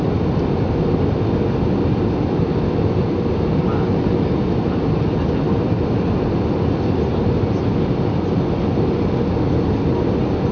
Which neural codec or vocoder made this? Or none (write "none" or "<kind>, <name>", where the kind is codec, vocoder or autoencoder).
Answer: none